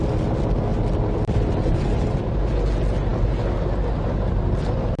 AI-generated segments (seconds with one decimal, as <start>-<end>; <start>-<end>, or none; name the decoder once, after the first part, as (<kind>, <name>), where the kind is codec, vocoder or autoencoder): 0.7-2.3 (vocoder, BigVGAN v2)